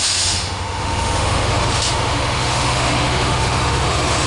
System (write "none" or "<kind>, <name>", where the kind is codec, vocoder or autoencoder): autoencoder, DAC-VAE